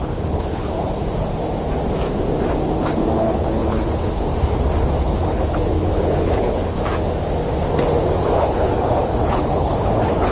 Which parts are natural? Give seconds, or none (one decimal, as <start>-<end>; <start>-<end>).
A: 1.0-3.2; 4.3-5.0; 6.8-8.4